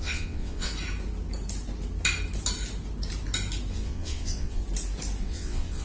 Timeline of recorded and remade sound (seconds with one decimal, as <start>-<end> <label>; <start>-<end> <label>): 0.0-0.7 remade; 0.7-3.7 recorded; 3.7-4.6 remade; 4.6-5.2 recorded; 5.2-5.8 remade